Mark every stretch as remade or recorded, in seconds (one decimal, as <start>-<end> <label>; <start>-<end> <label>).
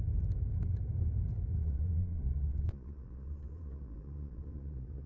0.0-1.6 recorded; 1.6-5.1 remade